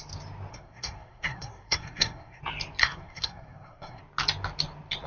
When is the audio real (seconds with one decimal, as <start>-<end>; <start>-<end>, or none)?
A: 0.0-0.5; 2.4-2.8; 4.0-5.1